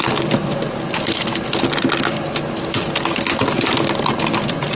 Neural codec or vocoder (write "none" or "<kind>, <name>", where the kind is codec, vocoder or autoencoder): none